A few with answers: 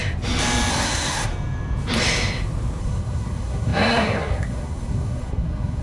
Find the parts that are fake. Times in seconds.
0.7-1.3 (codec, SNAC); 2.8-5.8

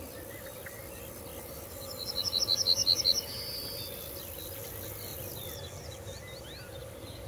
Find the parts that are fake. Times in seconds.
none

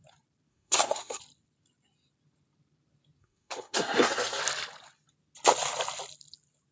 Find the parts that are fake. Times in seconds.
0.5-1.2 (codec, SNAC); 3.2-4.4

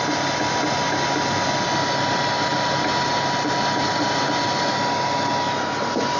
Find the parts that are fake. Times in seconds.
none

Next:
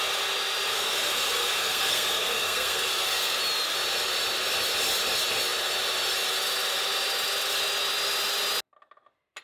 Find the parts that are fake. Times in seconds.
0.7-3.4 (codec, SNAC)